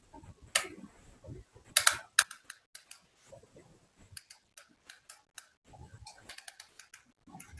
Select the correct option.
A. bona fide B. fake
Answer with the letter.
A